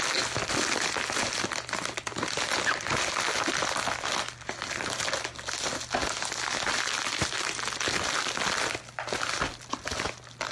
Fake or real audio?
real